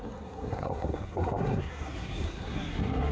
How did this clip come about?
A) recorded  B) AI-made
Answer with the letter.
B